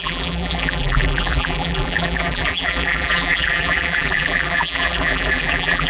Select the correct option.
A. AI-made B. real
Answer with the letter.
A